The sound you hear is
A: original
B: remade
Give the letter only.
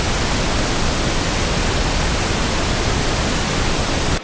A